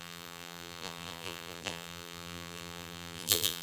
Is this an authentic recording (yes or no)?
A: no